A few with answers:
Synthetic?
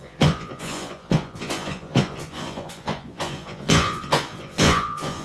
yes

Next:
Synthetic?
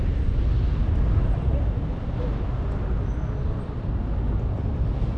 no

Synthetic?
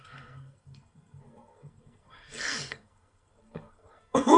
yes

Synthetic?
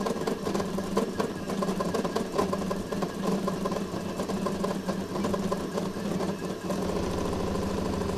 no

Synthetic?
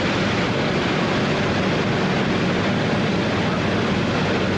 no